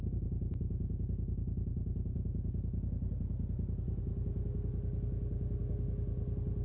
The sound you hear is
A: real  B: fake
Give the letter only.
A